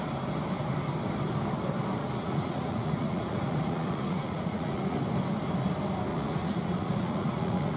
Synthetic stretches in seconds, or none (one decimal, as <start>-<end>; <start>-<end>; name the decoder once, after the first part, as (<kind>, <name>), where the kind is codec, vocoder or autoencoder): 2.0-5.0 (vocoder, Vocos); 6.1-7.8